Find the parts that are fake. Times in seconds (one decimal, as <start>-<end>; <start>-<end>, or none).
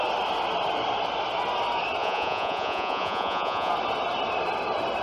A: 2.0-3.7